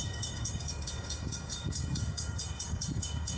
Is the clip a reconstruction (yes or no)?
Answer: yes